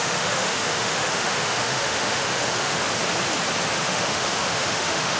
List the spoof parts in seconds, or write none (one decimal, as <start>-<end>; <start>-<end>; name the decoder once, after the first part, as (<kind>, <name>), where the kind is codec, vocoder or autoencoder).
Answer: 0.0-2.8 (autoencoder, DAC-VAE); 3.8-5.2